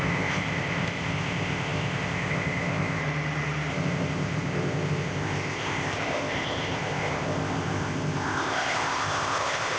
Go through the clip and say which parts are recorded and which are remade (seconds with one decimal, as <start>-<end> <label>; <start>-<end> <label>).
0.0-3.0 remade; 3.0-3.7 recorded; 3.7-9.8 remade